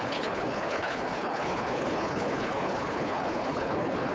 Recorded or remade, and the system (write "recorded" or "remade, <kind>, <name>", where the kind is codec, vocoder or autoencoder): remade, codec, HILCodec